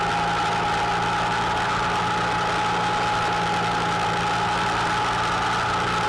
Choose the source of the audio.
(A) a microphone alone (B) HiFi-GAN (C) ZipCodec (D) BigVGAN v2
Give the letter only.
A